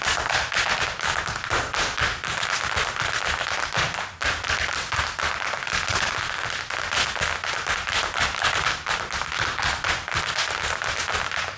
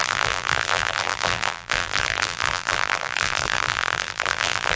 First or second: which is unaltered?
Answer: first